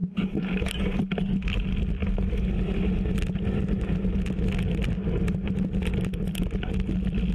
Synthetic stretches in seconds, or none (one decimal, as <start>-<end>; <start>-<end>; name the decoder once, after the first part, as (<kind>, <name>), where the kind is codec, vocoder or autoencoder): none